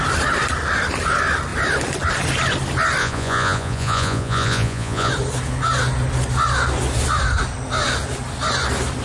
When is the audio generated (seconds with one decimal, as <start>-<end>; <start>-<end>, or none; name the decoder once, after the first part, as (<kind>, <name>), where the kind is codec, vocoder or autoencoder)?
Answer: 3.0-5.1 (vocoder, Vocos)